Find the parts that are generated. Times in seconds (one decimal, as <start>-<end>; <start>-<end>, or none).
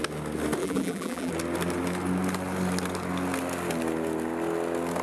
0.6-1.3